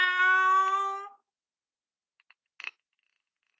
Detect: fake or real real